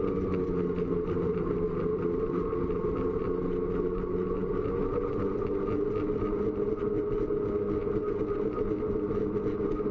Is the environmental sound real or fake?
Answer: real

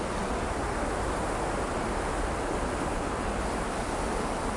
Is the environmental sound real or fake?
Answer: real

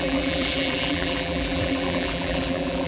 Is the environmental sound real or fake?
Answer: fake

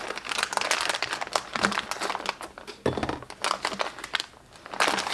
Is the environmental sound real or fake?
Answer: real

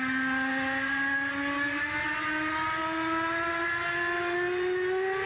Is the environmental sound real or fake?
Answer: real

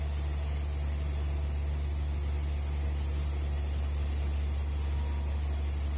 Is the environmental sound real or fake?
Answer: real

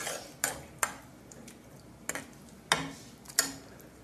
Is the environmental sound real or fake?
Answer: real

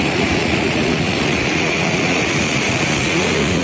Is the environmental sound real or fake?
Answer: fake